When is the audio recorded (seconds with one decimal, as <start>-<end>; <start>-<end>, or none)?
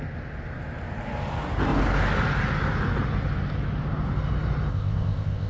0.0-4.7